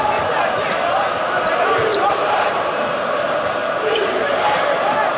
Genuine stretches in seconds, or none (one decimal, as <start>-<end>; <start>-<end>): 0.0-1.9; 2.8-3.6; 4.6-5.2